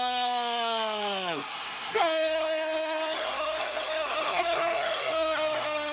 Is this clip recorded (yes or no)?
no